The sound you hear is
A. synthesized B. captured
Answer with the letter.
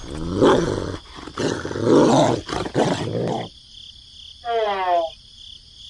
B